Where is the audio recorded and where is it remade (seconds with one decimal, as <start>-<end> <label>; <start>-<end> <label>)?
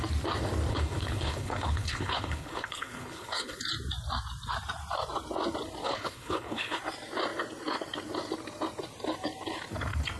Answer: 0.0-0.7 recorded; 0.7-3.6 remade; 3.6-5.8 recorded; 5.8-6.8 remade; 6.8-10.2 recorded